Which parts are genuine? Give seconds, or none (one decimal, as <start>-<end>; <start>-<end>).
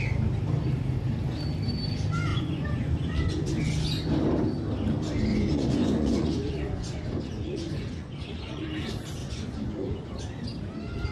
0.0-2.3; 3.7-5.3; 8.6-9.2; 10.2-11.1